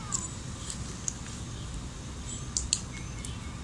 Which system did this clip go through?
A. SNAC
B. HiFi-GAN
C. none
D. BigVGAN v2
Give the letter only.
C